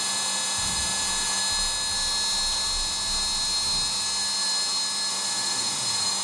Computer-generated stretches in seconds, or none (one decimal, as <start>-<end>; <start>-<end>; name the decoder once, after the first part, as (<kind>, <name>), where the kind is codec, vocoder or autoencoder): 0.0-1.4 (vocoder, Vocos); 5.1-6.2